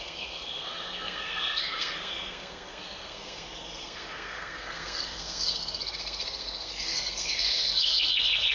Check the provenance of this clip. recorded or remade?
remade